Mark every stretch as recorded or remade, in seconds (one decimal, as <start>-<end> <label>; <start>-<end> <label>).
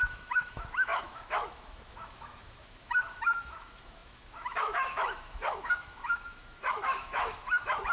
0.0-7.9 remade